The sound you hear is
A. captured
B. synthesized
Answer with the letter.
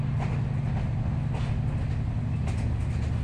A